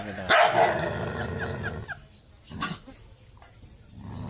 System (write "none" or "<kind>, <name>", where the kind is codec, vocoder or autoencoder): none